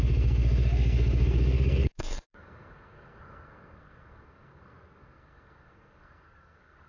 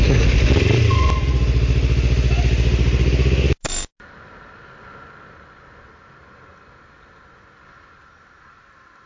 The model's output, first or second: first